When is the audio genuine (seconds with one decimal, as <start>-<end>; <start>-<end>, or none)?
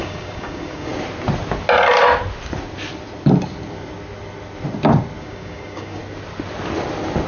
0.9-5.2; 6.0-7.3